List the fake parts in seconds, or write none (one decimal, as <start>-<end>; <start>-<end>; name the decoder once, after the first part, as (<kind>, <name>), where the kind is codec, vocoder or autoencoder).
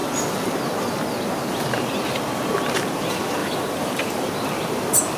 3.4-4.2 (vocoder, BigVGAN v2)